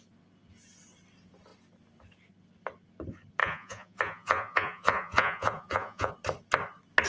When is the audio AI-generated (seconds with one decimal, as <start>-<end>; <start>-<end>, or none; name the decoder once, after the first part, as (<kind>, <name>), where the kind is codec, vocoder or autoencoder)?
3.4-6.1 (vocoder, Vocos)